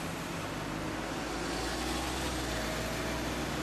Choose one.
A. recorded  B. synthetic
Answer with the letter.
A